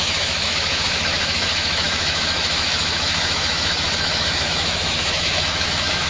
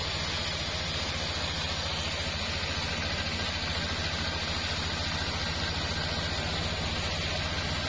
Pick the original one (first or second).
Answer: second